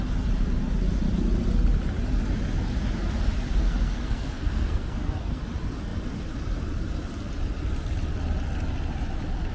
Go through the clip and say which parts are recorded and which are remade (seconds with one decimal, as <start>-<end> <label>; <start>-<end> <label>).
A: 0.0-3.6 recorded; 3.6-5.4 remade; 5.4-9.5 recorded